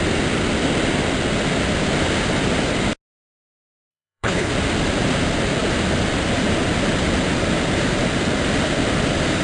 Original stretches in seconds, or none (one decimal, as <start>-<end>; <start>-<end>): 0.0-3.9; 4.5-9.4